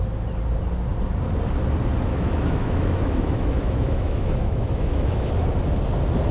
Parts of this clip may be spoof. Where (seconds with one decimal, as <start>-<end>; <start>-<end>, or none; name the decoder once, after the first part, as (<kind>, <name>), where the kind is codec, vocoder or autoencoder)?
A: 2.1-5.3 (autoencoder, DAC-VAE)